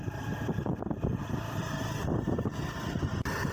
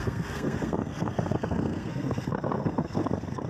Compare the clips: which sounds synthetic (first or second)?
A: second